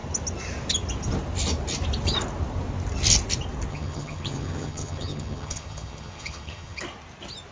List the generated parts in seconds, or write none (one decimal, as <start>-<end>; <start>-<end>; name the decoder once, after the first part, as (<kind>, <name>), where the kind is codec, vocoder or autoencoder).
3.7-6.8 (vocoder, HiFi-GAN)